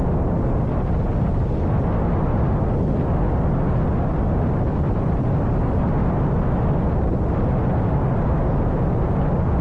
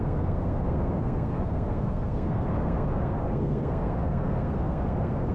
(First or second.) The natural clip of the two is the first